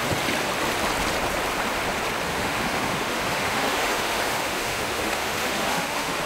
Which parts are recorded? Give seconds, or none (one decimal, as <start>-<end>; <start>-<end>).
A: 0.0-2.3